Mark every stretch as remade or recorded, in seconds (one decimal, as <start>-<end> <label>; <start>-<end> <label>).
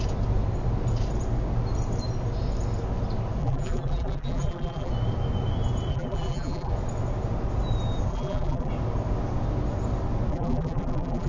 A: 0.0-3.4 recorded; 3.4-4.9 remade; 4.9-5.9 recorded; 5.9-6.7 remade; 6.7-8.1 recorded; 8.1-8.7 remade; 8.7-10.3 recorded; 10.3-11.3 remade